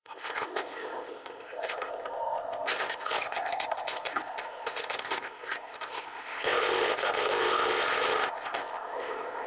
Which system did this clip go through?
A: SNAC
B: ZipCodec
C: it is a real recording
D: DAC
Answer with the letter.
B